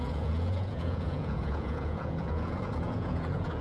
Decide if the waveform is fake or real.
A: fake